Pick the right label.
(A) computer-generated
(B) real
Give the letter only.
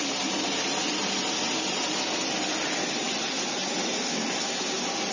B